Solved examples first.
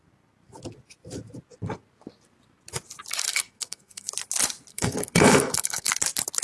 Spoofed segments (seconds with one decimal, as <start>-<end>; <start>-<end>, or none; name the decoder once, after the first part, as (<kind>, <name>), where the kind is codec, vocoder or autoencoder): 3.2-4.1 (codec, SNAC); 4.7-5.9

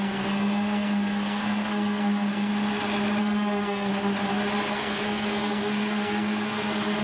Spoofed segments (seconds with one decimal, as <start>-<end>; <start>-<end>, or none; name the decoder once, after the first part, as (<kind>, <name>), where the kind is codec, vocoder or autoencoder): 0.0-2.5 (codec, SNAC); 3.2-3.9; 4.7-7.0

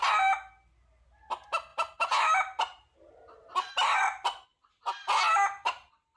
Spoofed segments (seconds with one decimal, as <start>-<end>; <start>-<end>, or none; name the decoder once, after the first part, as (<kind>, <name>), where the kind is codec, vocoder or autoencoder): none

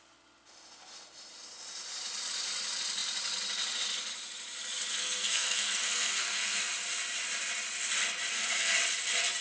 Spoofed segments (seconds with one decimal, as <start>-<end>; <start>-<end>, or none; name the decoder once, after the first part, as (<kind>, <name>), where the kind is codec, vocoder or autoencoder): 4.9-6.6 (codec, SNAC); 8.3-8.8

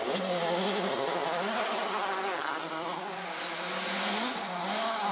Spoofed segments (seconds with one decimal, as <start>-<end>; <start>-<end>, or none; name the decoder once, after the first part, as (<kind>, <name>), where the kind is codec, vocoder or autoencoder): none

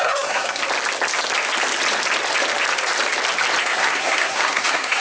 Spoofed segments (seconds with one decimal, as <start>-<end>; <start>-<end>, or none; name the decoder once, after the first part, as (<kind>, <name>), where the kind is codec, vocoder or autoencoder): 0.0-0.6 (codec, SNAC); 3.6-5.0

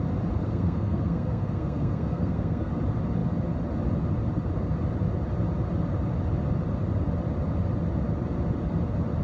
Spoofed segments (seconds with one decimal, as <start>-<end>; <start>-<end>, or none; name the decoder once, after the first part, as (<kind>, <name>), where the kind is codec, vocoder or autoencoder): 0.4-2.7 (codec, SNAC)